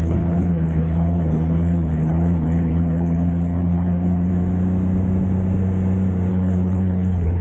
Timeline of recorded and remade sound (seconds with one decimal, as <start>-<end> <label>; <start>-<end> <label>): 0.0-4.3 remade; 4.3-6.3 recorded; 6.3-7.4 remade